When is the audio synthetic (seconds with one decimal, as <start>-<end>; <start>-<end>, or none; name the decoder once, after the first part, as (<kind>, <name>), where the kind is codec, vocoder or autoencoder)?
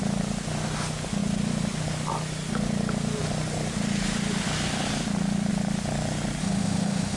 6.4-7.2 (autoencoder, DAC-VAE)